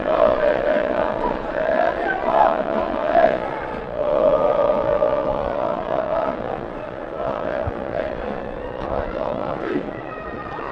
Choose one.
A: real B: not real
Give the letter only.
B